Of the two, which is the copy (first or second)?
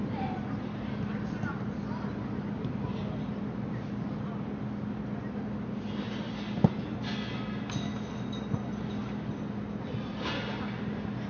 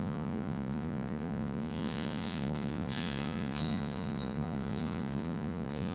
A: second